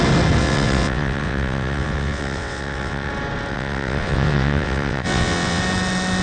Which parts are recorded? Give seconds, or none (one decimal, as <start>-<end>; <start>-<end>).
0.0-0.4; 3.1-3.5; 5.6-6.2